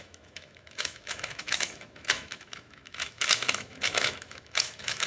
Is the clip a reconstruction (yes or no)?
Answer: yes